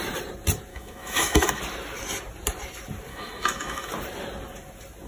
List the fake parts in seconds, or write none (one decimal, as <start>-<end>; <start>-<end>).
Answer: 0.7-1.6; 3.1-3.9